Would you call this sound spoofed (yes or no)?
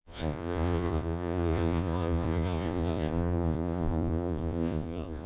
yes